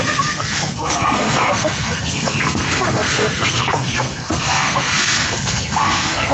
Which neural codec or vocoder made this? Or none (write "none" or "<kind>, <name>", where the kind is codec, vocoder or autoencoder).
codec, SNAC